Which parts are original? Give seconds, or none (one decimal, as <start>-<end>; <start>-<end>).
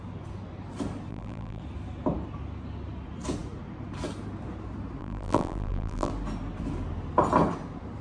0.0-1.1; 1.6-5.0; 6.1-8.0